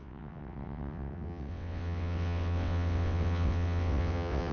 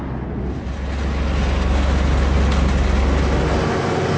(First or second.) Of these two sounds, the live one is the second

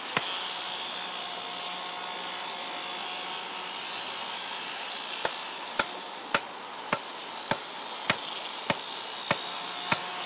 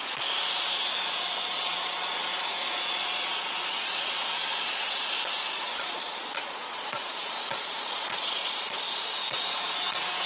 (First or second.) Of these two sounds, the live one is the first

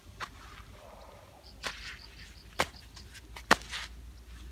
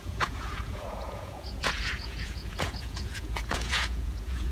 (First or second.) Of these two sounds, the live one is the first